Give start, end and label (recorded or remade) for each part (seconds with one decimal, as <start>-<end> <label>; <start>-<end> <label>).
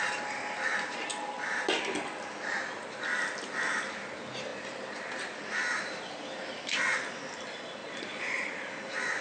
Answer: 0.0-7.8 recorded; 7.8-8.5 remade; 8.5-9.2 recorded